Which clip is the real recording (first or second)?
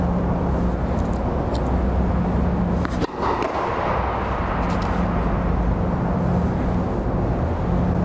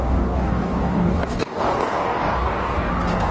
first